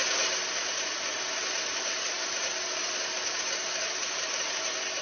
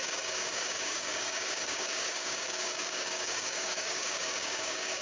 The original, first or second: first